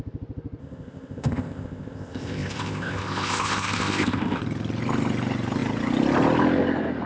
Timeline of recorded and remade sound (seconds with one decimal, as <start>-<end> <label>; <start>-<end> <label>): 0.0-0.6 recorded; 0.6-4.4 remade; 4.4-7.1 recorded